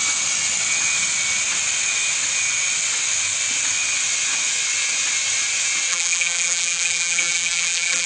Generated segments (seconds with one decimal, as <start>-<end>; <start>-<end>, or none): 5.9-8.1